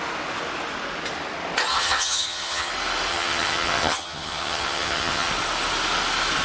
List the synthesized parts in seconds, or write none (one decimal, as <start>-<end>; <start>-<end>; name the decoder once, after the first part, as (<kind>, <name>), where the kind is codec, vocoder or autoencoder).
1.7-2.7 (vocoder, HiFi-GAN); 3.1-5.3